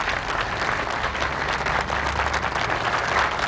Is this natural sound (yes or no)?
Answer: yes